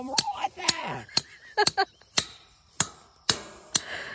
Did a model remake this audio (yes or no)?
yes